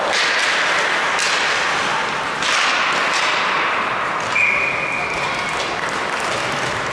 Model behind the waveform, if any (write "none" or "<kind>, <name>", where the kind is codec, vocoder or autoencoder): none